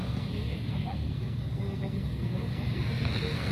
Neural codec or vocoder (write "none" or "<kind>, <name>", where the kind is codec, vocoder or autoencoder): codec, SNAC